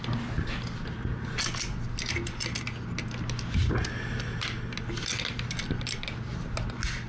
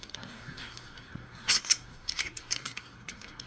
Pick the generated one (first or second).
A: second